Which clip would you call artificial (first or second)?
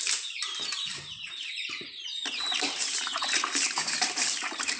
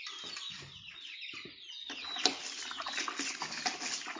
first